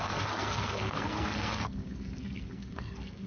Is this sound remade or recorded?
remade